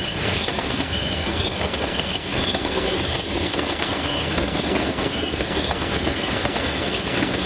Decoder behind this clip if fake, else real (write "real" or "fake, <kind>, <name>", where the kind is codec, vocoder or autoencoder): fake, codec, SNAC